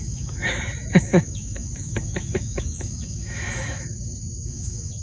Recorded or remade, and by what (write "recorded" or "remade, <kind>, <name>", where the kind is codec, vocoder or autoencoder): remade, autoencoder, DAC-VAE